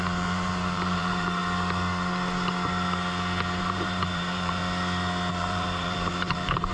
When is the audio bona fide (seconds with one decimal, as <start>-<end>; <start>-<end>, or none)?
1.4-3.6; 4.6-5.3